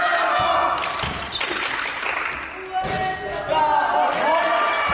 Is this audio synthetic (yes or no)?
no